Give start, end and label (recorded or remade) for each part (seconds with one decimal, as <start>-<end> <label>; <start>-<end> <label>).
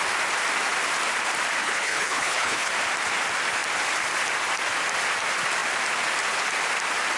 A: 0.0-1.6 recorded; 1.6-2.7 remade; 2.7-7.2 recorded